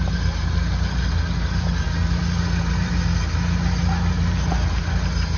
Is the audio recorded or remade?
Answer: recorded